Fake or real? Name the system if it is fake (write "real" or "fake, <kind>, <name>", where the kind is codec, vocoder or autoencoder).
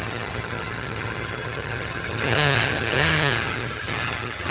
fake, vocoder, HiFi-GAN